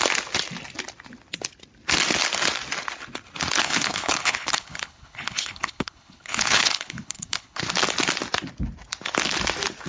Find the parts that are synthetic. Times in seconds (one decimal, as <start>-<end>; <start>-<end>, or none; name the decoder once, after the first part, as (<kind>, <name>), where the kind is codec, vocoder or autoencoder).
3.6-7.6 (codec, HILCodec)